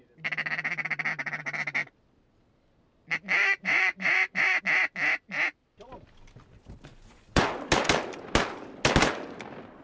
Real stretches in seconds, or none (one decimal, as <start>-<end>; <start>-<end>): 0.0-3.4; 4.6-6.9; 7.5-9.8